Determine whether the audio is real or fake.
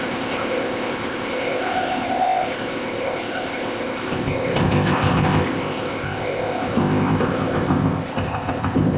fake